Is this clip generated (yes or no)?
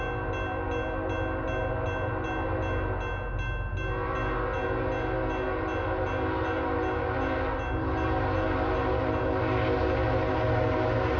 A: no